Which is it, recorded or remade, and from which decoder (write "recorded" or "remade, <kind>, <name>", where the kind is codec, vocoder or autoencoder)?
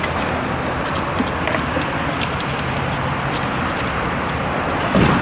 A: recorded